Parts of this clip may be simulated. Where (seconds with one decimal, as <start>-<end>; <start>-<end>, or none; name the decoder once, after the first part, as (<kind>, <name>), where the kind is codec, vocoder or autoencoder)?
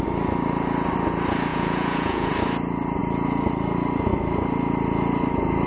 1.5-2.3 (vocoder, Vocos)